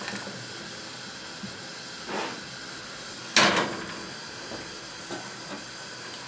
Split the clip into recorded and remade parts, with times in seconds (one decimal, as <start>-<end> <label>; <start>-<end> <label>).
0.0-6.3 recorded